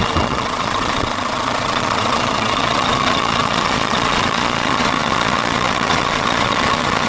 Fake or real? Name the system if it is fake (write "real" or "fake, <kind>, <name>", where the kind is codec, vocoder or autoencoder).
fake, vocoder, Vocos